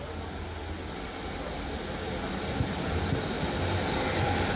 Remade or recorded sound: recorded